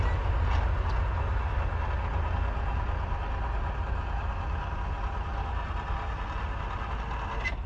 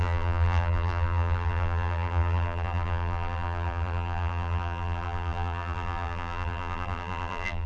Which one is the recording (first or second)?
first